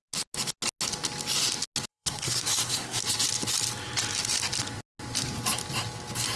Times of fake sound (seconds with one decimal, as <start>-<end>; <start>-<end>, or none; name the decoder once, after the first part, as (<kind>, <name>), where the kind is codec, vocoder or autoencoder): 1.9-3.0 (codec, SNAC)